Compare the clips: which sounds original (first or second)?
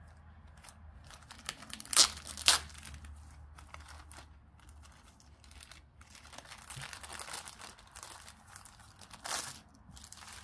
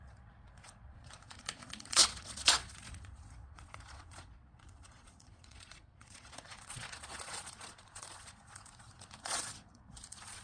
first